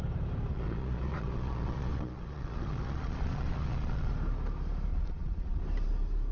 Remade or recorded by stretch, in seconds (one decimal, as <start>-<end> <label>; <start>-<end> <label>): 0.0-0.5 recorded; 0.5-4.1 remade; 4.1-4.9 recorded; 4.9-5.6 remade; 5.6-6.3 recorded